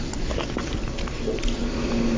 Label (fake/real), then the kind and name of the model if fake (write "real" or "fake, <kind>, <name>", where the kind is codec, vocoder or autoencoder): real